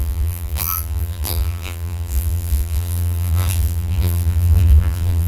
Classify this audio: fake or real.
fake